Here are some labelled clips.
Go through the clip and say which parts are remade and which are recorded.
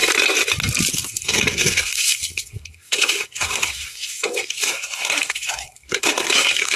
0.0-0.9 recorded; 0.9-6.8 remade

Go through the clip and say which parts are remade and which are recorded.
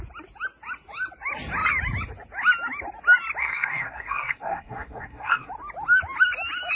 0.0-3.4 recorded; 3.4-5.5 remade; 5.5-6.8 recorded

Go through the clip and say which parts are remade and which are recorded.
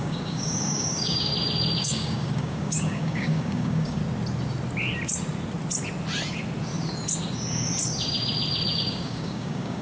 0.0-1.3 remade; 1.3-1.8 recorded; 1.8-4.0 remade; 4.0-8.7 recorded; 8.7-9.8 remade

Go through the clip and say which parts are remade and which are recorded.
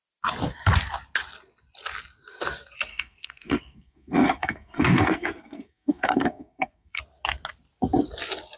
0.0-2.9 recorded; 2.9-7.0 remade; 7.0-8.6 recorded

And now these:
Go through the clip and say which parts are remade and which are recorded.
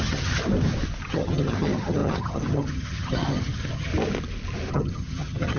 0.0-0.4 remade; 0.4-1.1 recorded; 1.1-3.9 remade; 3.9-4.7 recorded; 4.7-5.6 remade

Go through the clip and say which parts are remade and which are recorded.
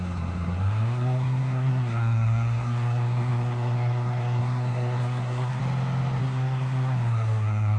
0.0-5.6 remade; 5.6-6.2 recorded; 6.2-7.8 remade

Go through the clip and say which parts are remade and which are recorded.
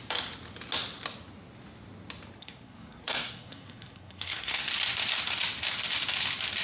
0.0-2.4 recorded; 2.4-4.7 remade; 4.7-6.6 recorded